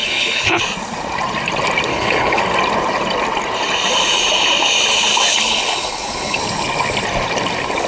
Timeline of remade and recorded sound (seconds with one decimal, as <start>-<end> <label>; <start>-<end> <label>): 0.0-0.6 remade; 0.6-1.9 recorded; 1.9-2.4 remade; 2.4-5.3 recorded; 5.3-6.4 remade; 6.4-7.9 recorded